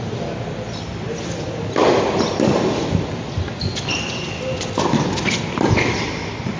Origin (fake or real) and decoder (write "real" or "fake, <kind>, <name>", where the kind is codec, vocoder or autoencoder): real